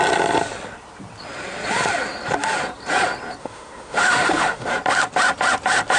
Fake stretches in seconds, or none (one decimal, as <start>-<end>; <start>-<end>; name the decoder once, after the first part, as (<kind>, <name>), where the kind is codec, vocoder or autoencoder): 3.4-4.7 (autoencoder, DAC-VAE)